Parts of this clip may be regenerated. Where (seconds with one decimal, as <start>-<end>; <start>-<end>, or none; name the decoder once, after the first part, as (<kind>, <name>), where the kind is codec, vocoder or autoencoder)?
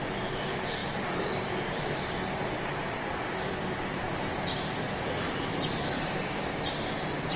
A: 0.0-7.4 (vocoder, BigVGAN v2)